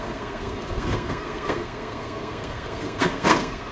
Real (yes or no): no